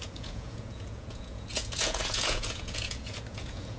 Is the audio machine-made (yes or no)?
yes